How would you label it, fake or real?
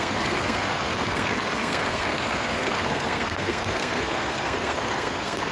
fake